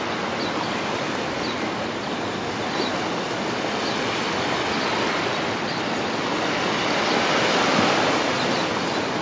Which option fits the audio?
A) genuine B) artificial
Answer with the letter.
A